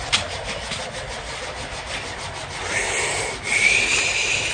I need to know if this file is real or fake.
real